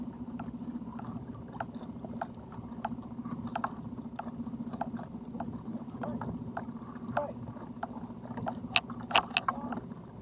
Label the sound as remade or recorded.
recorded